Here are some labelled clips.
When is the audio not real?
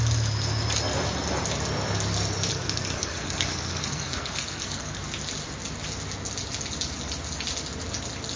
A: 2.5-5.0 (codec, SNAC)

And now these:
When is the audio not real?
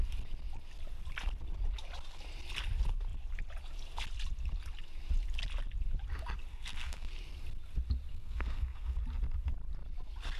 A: 6.5-7.1 (codec, SNAC); 8.1-9.0